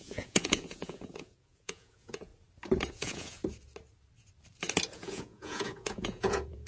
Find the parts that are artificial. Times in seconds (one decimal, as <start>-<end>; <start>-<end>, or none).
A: 0.0-2.3; 2.9-3.4; 4.9-6.7